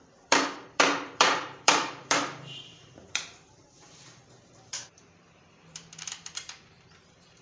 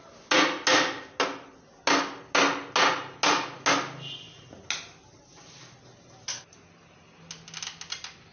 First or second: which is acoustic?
second